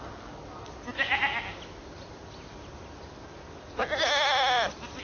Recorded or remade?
recorded